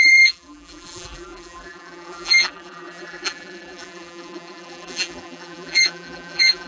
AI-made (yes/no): yes